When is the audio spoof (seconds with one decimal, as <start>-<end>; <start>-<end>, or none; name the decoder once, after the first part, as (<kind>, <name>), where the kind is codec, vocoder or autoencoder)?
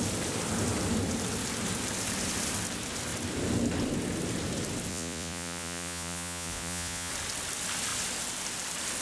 4.9-7.1 (vocoder, Vocos)